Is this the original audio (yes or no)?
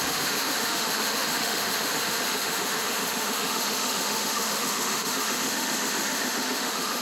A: no